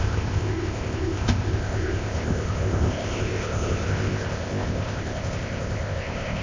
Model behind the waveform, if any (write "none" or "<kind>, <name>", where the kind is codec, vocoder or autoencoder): codec, ZipCodec